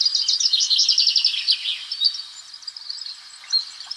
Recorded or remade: recorded